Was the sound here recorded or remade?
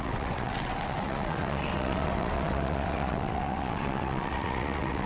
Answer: remade